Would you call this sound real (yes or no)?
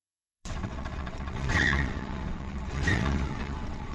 no